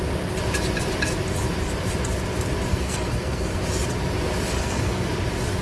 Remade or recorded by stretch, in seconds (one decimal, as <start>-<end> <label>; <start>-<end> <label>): 0.0-2.7 recorded; 2.7-3.6 remade; 3.6-4.6 recorded; 4.6-5.1 remade; 5.1-5.6 recorded